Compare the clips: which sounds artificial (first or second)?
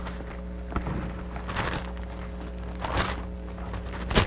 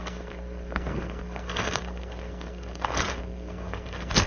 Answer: second